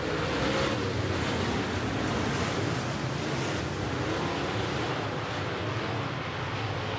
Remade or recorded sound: recorded